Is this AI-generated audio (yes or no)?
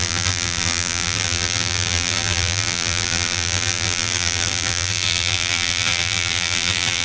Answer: yes